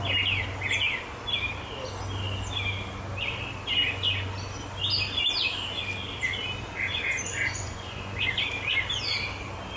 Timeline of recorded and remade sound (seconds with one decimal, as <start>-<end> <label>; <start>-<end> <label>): 0.0-6.9 recorded; 6.9-8.3 remade; 8.3-9.8 recorded